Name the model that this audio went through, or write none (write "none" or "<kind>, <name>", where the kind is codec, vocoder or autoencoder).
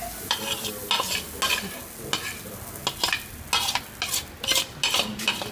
none